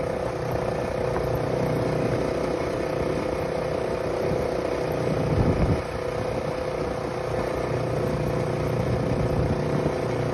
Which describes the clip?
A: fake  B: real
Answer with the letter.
B